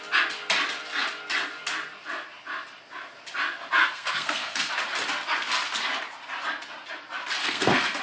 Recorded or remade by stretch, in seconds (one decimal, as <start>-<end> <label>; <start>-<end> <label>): 0.0-3.8 recorded; 3.8-4.7 remade; 4.7-7.4 recorded; 7.4-8.0 remade